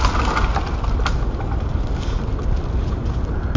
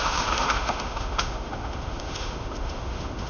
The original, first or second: first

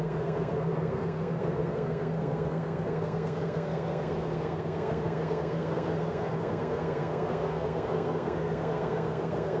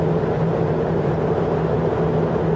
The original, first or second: second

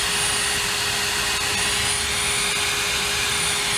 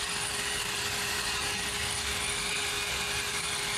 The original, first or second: first